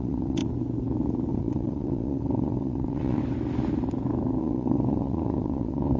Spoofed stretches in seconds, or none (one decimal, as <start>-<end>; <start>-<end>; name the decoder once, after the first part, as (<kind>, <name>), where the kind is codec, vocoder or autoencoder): 0.0-0.4 (vocoder, WaveNeXt); 1.3-3.2; 4.4-6.0